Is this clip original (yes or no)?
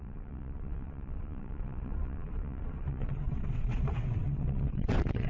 no